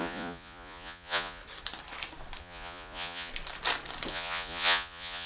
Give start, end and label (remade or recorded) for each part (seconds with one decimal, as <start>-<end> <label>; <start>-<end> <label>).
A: 0.0-1.4 remade; 1.4-2.4 recorded; 2.4-3.3 remade; 3.3-4.1 recorded; 4.1-5.3 remade